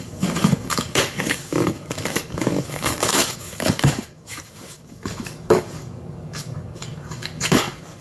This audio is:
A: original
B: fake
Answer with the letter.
B